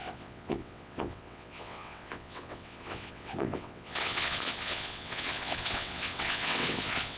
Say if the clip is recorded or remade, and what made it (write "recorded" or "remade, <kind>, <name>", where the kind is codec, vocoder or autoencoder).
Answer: remade, vocoder, WaveNeXt